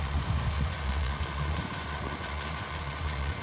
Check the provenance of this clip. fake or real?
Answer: fake